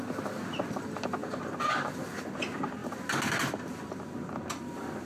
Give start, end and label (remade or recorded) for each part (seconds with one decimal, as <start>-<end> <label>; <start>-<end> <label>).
0.0-5.1 recorded